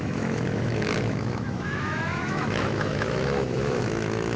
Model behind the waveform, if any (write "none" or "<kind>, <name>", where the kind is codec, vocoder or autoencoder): autoencoder, DAC-VAE